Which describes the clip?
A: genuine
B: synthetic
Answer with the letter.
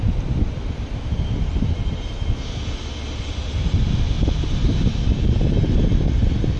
A